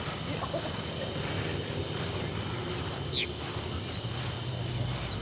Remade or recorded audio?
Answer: recorded